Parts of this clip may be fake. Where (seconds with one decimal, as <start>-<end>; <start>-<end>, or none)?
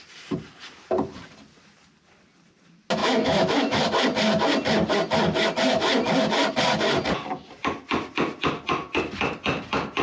3.0-3.8